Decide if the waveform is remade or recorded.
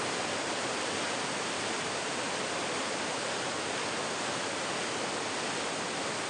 recorded